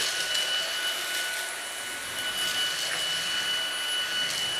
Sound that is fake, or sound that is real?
real